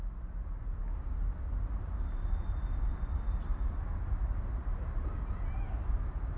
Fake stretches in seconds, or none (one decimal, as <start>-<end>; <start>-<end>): none